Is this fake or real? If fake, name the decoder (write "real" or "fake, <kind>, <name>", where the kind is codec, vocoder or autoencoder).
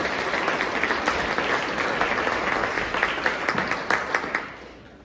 real